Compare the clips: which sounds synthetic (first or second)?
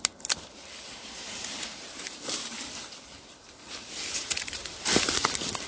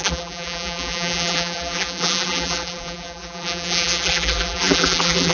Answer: second